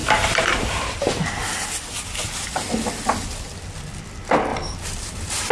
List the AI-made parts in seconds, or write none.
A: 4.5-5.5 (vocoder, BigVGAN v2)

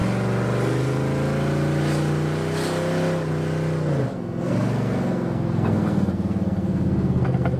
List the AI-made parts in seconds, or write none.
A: 4.1-7.6 (codec, SNAC)

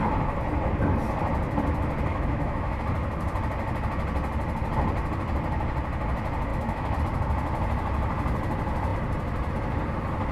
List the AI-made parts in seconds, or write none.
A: 2.1-2.8 (autoencoder, DAC-VAE); 6.5-7.0

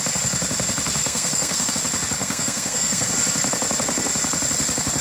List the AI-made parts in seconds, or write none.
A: 1.0-1.7 (codec, SNAC); 2.2-3.1

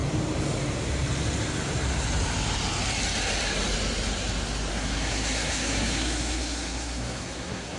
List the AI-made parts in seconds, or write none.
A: 4.7-7.8 (codec, SNAC)

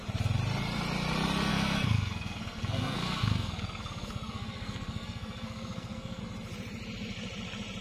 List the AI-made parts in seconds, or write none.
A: 1.5-6.2 (codec, SNAC)